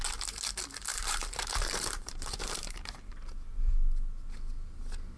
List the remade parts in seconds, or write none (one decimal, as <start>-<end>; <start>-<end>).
0.9-3.1